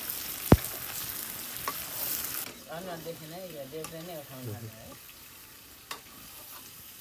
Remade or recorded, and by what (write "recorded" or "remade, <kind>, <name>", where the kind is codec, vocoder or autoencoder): recorded